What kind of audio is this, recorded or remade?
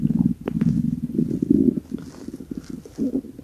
recorded